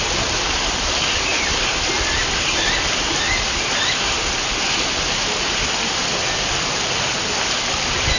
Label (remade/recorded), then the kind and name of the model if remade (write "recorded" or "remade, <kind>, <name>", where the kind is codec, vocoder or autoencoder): recorded